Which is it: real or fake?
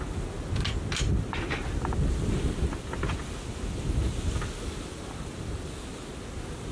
real